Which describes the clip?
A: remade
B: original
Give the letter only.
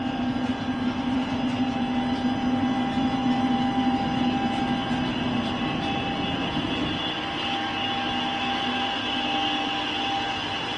B